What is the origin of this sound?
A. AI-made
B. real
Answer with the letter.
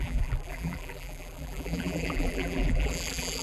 A